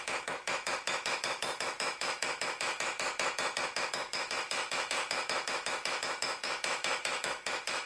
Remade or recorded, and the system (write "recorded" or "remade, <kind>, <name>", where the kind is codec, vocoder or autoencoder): remade, autoencoder, DAC-VAE